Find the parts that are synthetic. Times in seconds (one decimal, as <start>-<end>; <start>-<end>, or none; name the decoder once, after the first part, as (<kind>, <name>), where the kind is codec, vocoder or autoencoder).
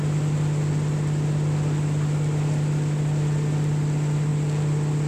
none